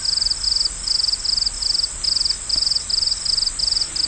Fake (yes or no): no